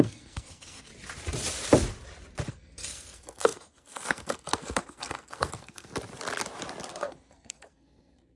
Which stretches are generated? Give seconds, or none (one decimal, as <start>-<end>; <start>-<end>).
0.0-0.9; 2.5-5.9; 6.9-8.4